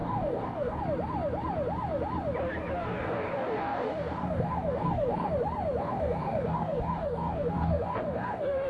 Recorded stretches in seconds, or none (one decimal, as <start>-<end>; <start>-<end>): 0.8-2.8; 5.3-5.8